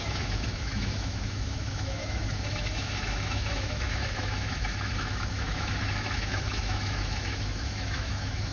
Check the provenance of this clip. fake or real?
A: fake